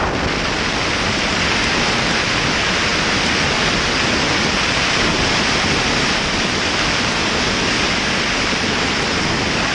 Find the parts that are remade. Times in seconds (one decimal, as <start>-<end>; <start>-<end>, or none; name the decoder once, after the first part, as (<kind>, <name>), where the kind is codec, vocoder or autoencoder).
none